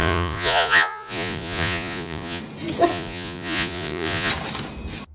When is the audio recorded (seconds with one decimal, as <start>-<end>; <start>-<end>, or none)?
2.4-2.9; 4.3-5.1